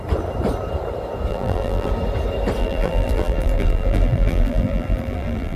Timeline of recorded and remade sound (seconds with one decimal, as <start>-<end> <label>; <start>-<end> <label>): 0.0-1.3 recorded; 1.3-1.9 remade; 1.9-2.6 recorded; 2.6-5.6 remade